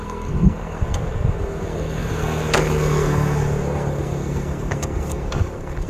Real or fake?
fake